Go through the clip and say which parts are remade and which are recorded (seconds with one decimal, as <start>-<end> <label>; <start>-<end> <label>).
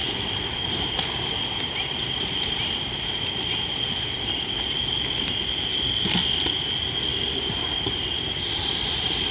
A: 0.0-2.9 remade; 2.9-5.7 recorded; 5.7-6.5 remade; 6.5-7.1 recorded; 7.1-9.3 remade